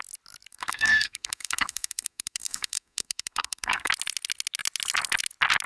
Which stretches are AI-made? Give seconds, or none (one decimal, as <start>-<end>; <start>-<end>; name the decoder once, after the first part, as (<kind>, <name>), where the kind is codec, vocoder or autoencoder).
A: 0.5-3.9 (codec, SNAC)